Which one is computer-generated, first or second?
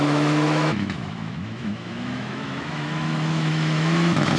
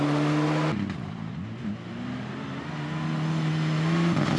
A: first